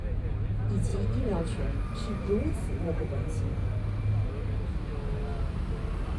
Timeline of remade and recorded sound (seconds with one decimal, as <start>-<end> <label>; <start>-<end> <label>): 0.0-0.9 recorded; 0.9-1.4 remade; 1.4-2.2 recorded; 2.2-3.1 remade; 3.1-6.2 recorded